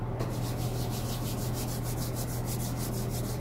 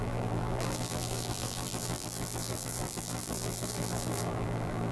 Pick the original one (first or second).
first